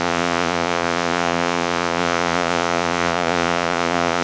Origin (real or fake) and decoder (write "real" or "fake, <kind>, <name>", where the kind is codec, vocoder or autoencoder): fake, vocoder, Vocos